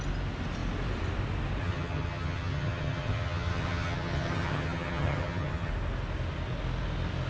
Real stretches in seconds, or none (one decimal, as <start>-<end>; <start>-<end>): 0.0-1.6; 5.7-7.3